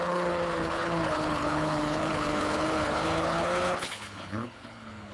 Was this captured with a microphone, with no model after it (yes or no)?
no